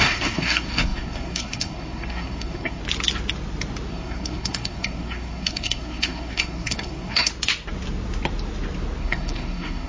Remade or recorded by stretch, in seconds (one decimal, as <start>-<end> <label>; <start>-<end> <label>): 0.0-2.8 remade; 2.8-3.9 recorded; 3.9-7.3 remade; 7.3-9.0 recorded; 9.0-9.9 remade